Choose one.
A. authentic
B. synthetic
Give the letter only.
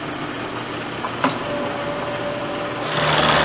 A